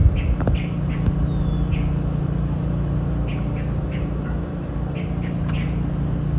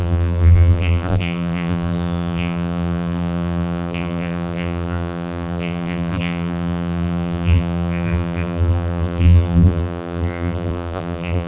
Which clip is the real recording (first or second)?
first